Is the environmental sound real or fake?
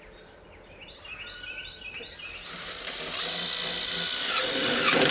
real